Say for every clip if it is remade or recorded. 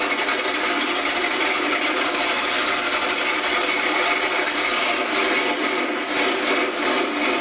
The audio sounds recorded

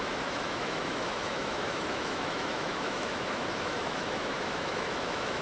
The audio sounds remade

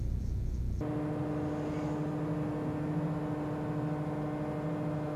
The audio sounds recorded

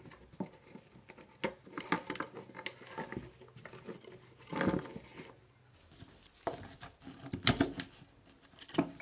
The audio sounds recorded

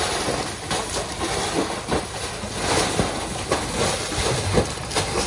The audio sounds recorded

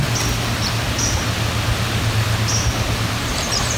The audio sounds recorded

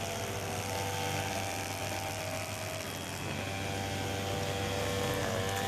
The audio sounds recorded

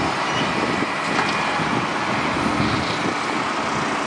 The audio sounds recorded